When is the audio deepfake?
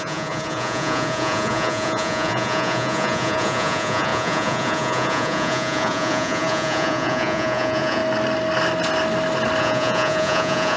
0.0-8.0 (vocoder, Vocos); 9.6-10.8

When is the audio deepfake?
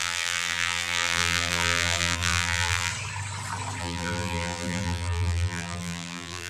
0.0-2.9 (vocoder, BigVGAN v2); 3.8-6.5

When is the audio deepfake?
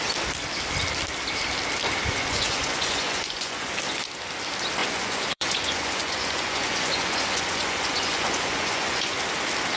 2.2-3.7 (vocoder, Vocos); 4.8-9.2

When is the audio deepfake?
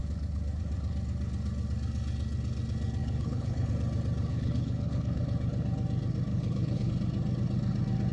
3.0-3.7 (codec, HILCodec); 4.3-5.2; 6.3-6.9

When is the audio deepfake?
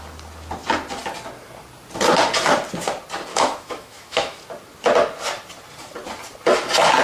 3.3-4.4 (autoencoder, DAC-VAE)